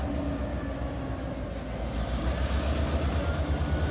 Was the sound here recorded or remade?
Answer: recorded